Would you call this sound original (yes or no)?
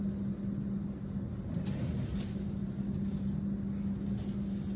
yes